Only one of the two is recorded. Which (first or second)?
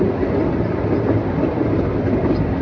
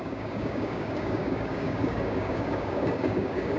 first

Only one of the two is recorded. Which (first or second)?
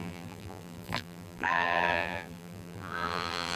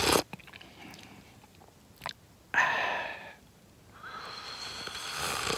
second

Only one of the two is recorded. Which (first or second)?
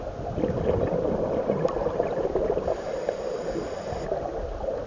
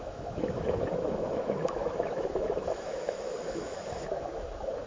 first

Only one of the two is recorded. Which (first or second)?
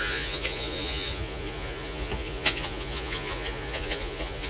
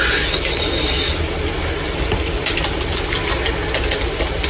second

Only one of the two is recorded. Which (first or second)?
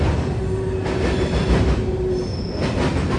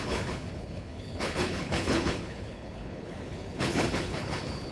first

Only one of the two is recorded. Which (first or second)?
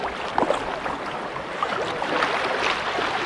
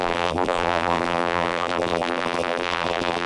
first